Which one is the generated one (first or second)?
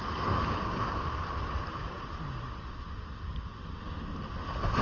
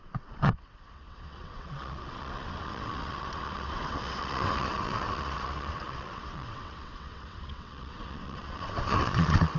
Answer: second